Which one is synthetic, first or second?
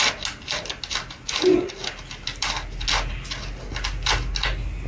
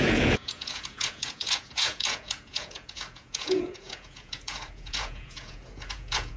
second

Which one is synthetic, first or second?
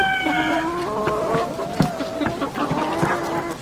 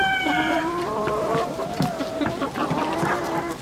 second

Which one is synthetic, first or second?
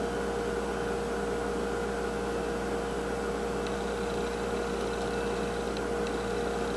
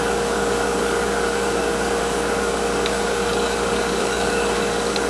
second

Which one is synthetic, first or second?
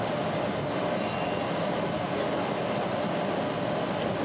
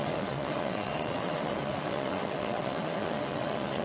second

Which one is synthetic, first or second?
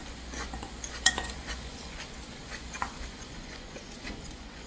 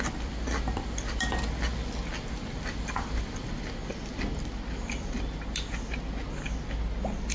first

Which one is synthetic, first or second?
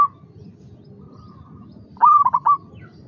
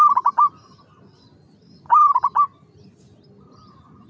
first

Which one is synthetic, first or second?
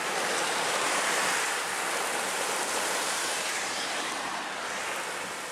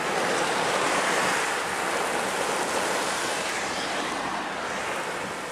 first